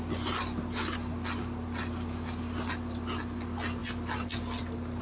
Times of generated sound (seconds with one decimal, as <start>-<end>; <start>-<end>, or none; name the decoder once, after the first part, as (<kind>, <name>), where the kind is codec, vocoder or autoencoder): 3.8-4.6 (vocoder, BigVGAN v2)